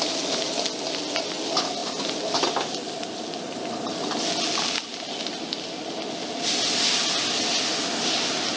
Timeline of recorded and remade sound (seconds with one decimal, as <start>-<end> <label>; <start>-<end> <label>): 0.0-8.6 recorded